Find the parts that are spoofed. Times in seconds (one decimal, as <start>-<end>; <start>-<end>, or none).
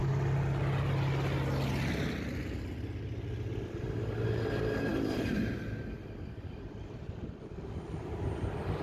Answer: 4.9-7.2